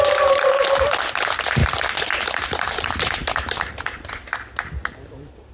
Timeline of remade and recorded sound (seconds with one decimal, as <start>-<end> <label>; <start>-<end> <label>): 0.0-1.6 recorded; 1.6-4.1 remade; 4.1-5.5 recorded